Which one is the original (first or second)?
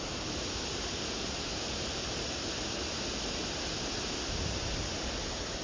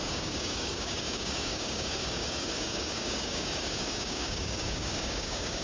first